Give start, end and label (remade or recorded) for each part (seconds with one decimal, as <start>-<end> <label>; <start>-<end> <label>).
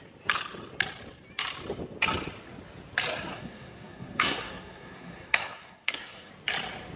0.0-3.3 recorded; 3.3-6.3 remade; 6.3-7.0 recorded